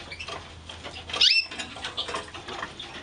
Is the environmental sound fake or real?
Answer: real